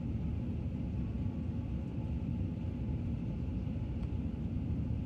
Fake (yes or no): no